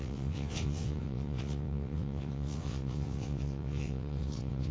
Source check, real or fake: fake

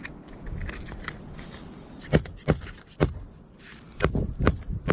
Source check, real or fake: real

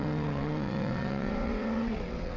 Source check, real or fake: fake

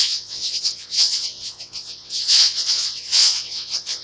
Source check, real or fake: fake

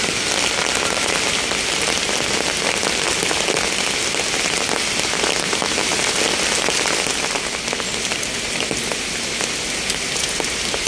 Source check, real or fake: real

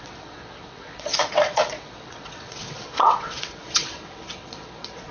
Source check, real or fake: fake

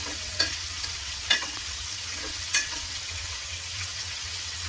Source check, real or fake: fake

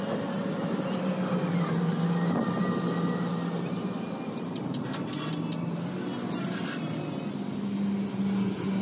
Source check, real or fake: real